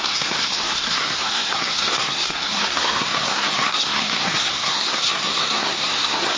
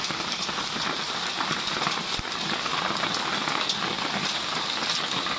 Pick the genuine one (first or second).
second